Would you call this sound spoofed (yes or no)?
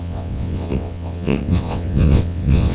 yes